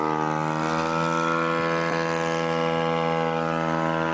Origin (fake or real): real